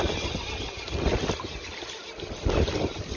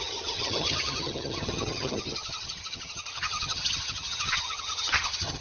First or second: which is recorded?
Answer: first